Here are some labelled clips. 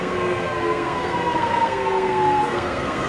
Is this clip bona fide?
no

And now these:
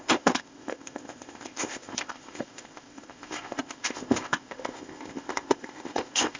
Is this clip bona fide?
no